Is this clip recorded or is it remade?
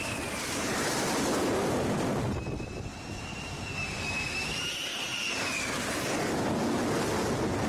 remade